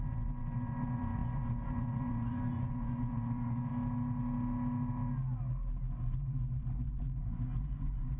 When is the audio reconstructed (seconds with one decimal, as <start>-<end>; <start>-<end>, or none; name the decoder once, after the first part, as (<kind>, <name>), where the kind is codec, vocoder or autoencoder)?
0.0-3.7 (vocoder, Vocos); 5.9-8.2